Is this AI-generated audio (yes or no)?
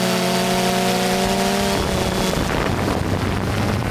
no